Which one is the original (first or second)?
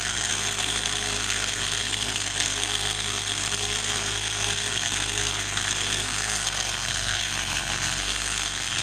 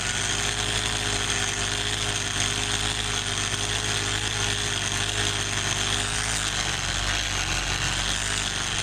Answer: second